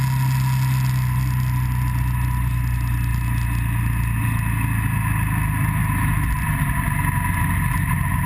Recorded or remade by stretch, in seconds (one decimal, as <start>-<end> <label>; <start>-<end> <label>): 0.0-8.3 recorded